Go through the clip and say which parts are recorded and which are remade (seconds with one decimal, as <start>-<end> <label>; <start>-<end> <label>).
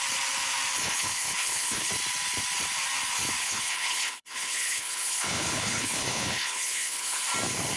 0.0-0.8 recorded; 0.8-1.9 remade; 1.9-3.4 recorded; 3.4-7.2 remade; 7.2-7.8 recorded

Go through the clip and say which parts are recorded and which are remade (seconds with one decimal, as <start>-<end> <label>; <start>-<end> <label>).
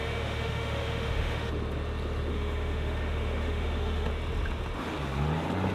0.0-1.5 remade; 1.5-2.3 recorded; 2.3-4.1 remade; 4.1-5.7 recorded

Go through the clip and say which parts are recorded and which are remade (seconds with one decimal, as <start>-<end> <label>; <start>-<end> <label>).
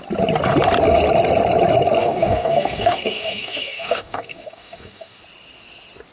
0.0-2.0 recorded; 2.0-5.2 remade; 5.2-6.1 recorded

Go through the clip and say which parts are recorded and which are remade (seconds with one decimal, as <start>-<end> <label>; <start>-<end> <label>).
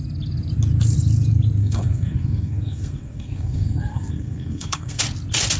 0.0-1.6 recorded; 1.6-5.0 remade; 5.0-5.6 recorded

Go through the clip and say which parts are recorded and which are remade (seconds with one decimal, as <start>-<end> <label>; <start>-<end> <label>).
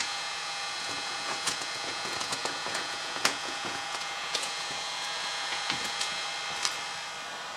0.0-6.3 remade; 6.3-7.6 recorded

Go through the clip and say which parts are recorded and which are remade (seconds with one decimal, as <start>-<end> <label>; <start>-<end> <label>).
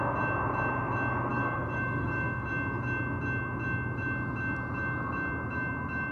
0.0-1.3 recorded; 1.3-2.5 remade; 2.5-6.1 recorded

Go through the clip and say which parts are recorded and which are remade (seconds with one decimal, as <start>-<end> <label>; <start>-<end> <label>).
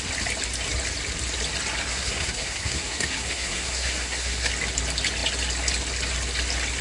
0.0-1.9 recorded; 1.9-4.5 remade; 4.5-6.8 recorded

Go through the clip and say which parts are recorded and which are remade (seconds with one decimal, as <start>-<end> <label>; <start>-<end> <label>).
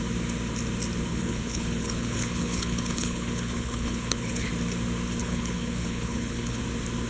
0.0-1.1 recorded; 1.1-4.5 remade; 4.5-5.2 recorded; 5.2-6.6 remade; 6.6-7.1 recorded